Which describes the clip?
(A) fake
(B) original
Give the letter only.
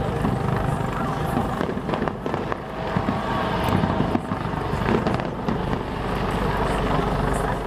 B